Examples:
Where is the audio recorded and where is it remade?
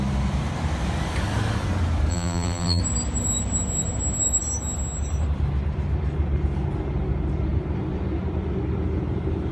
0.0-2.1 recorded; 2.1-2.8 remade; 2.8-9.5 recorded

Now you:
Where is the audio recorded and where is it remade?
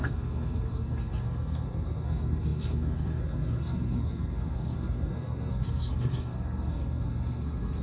0.0-7.8 remade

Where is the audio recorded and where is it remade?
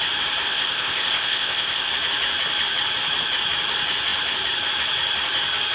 0.0-0.5 recorded; 0.5-1.9 remade; 1.9-5.7 recorded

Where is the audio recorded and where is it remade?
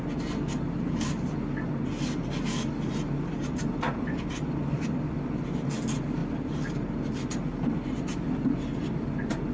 0.0-9.5 recorded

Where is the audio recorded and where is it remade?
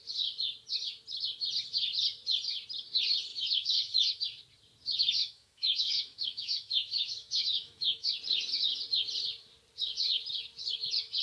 0.0-3.3 recorded; 3.3-4.2 remade; 4.2-5.2 recorded; 5.2-8.1 remade; 8.1-11.2 recorded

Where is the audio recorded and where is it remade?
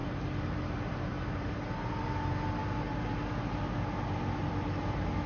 0.0-1.8 remade; 1.8-5.3 recorded